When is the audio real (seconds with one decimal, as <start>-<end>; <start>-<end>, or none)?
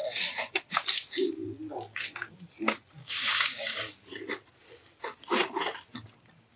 0.0-3.0; 3.8-6.6